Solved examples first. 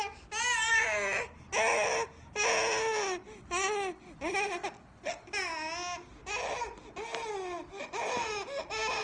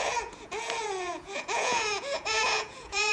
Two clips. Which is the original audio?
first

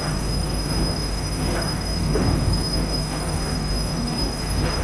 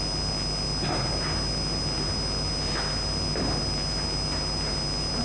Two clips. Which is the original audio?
second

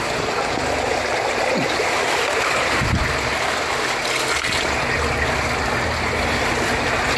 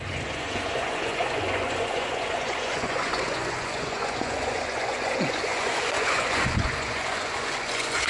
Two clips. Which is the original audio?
first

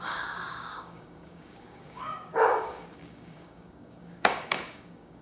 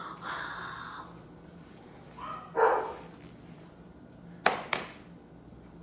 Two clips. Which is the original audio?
second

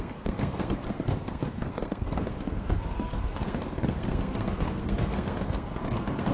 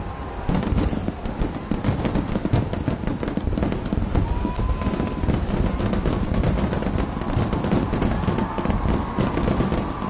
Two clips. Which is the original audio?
second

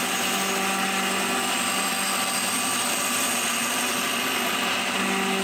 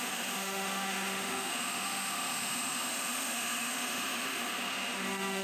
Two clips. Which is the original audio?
first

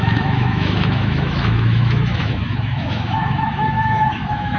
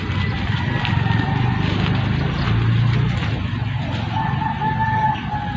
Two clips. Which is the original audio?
second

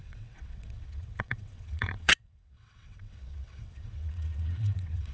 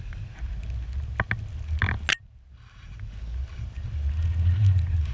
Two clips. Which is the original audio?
second